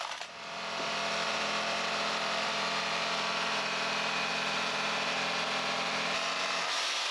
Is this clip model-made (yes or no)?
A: yes